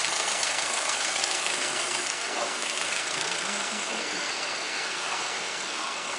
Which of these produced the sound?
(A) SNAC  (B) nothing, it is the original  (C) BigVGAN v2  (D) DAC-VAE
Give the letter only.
A